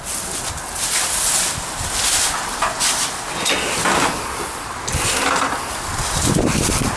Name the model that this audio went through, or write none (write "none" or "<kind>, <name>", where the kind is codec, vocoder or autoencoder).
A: none